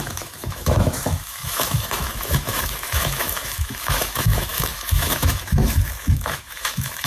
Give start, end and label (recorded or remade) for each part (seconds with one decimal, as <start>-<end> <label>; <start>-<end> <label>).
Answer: 0.0-7.1 remade